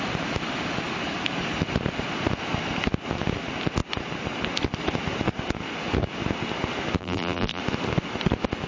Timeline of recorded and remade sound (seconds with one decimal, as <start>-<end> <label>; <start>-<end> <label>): 0.0-7.0 recorded; 7.0-7.6 remade; 7.6-8.7 recorded